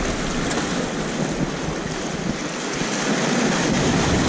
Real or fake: real